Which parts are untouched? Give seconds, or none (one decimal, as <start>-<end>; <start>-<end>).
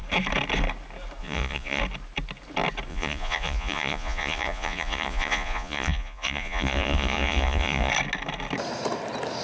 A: 0.0-1.2; 1.8-2.9; 7.9-9.4